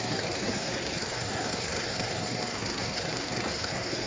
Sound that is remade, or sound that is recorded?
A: remade